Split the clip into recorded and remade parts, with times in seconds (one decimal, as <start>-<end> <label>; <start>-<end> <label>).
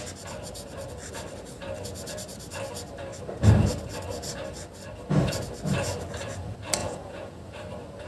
0.0-6.8 recorded; 6.8-7.4 remade; 7.4-8.1 recorded